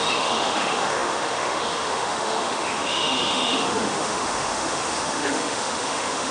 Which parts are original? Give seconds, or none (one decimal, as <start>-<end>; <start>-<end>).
none